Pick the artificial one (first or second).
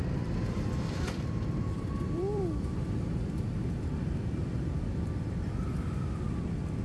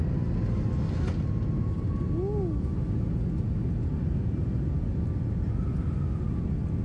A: first